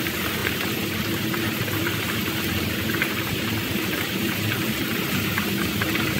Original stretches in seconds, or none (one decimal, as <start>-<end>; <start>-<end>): none